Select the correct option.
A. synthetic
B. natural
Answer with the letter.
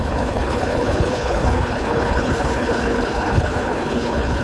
A